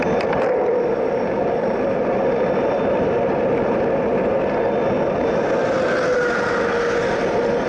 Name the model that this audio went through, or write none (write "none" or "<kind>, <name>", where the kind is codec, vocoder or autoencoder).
none